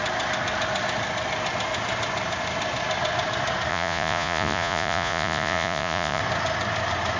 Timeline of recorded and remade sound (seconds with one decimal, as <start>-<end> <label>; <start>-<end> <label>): 0.0-3.7 recorded; 3.7-6.2 remade; 6.2-7.2 recorded